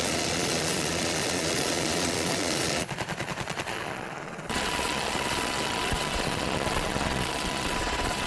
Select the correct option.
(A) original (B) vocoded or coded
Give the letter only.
B